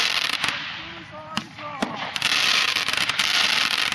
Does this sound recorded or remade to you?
remade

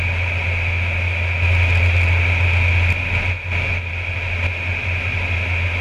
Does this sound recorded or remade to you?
recorded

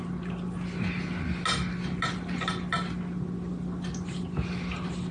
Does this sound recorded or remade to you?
recorded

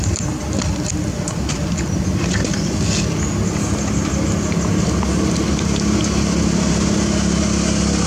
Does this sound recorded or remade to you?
recorded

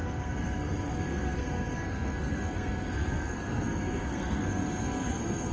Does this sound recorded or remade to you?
remade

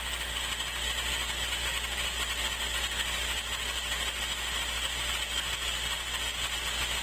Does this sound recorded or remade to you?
recorded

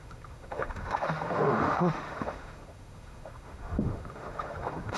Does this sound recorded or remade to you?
remade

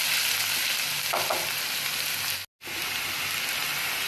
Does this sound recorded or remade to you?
recorded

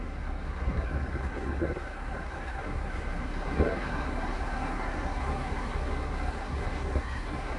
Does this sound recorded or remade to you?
remade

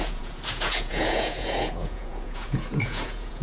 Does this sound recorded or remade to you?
remade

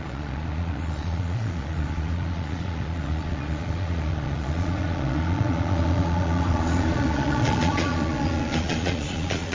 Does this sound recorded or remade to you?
remade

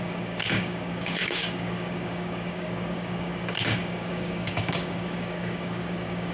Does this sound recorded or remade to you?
remade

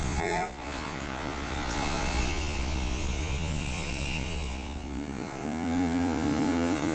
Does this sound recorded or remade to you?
remade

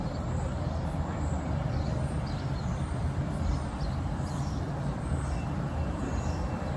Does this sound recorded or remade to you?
remade